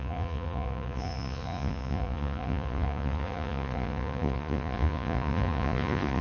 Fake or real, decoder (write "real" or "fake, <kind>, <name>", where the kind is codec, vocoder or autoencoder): fake, vocoder, Vocos